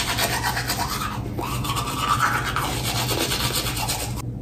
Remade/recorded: recorded